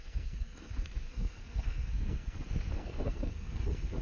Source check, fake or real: fake